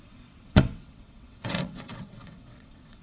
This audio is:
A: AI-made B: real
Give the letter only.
A